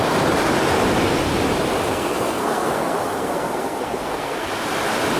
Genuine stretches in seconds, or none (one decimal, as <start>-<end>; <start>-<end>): 0.0-1.9; 4.5-5.2